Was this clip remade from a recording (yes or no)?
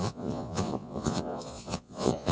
yes